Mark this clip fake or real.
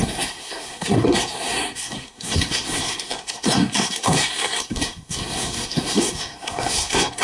fake